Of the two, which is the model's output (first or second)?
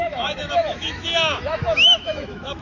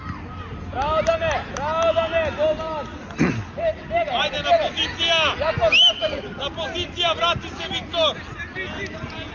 first